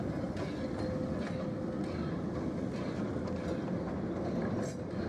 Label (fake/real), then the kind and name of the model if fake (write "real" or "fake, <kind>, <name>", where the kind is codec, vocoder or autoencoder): real